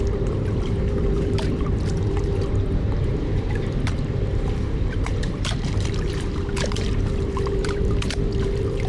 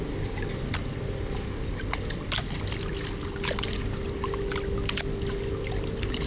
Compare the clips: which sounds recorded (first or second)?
second